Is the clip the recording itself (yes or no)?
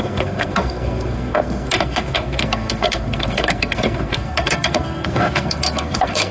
no